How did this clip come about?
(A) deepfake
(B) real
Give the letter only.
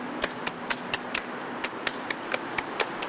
B